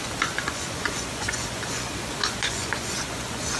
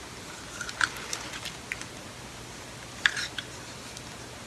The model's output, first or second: first